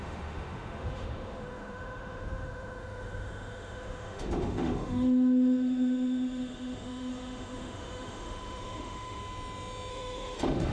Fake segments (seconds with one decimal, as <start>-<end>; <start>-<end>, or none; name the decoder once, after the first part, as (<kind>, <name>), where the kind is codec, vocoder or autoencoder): 0.0-9.2 (autoencoder, DAC-VAE); 9.9-10.7